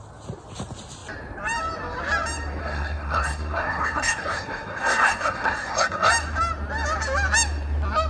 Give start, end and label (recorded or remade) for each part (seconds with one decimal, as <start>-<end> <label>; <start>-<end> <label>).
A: 0.0-2.6 recorded; 2.6-6.1 remade; 6.1-8.1 recorded

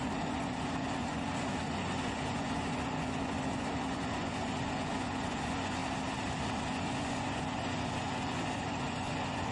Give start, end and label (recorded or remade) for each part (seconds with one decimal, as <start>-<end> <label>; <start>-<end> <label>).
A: 0.0-5.8 remade; 5.8-6.6 recorded; 6.6-9.5 remade

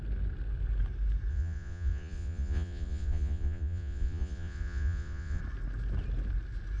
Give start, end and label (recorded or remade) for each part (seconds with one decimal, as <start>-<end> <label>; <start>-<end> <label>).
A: 0.0-1.3 recorded; 1.3-5.4 remade; 5.4-6.8 recorded